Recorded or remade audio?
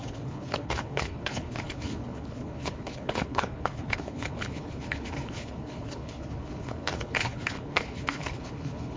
remade